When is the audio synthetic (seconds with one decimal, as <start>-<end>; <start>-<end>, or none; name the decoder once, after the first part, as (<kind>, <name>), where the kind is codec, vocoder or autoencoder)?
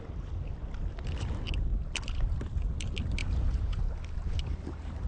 3.2-3.9 (vocoder, Vocos)